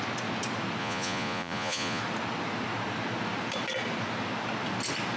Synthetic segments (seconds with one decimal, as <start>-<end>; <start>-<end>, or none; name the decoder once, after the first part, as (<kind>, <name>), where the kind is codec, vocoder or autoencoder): 0.8-2.0 (vocoder, Vocos)